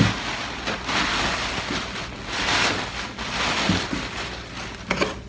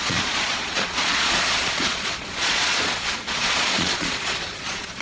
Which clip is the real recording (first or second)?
first